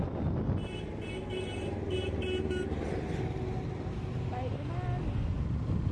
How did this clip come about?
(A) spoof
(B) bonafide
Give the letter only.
B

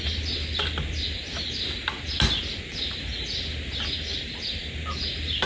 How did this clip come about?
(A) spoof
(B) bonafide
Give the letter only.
B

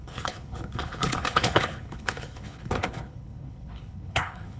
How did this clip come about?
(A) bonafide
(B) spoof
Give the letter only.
B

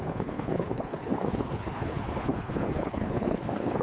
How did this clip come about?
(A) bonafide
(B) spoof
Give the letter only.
B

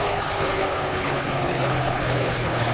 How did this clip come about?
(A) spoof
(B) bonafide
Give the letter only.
A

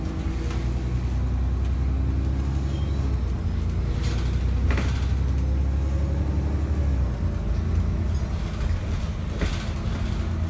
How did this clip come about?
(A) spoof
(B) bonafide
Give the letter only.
B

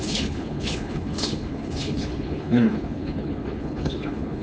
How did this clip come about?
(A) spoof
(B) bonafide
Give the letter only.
A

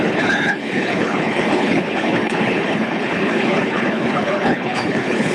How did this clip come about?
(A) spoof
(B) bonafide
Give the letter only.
A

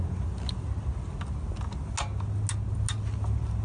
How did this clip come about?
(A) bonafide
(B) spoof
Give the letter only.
A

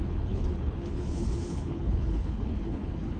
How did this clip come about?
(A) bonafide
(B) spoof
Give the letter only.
B